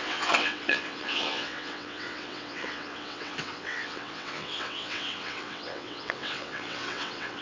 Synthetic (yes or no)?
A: yes